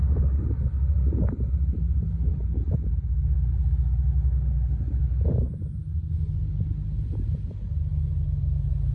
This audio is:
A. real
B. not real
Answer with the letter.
A